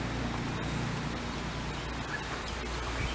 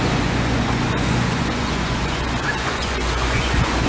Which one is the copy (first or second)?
second